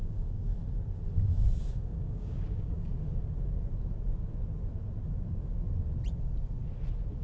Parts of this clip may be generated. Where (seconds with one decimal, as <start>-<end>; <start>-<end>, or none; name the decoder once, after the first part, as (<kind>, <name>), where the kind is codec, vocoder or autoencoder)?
0.0-0.5 (codec, DAC); 1.7-2.9